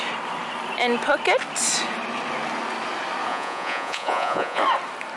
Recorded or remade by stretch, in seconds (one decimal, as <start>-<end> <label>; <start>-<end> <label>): 0.0-3.3 recorded; 3.3-4.6 remade; 4.6-5.2 recorded